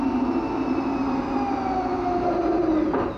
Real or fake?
real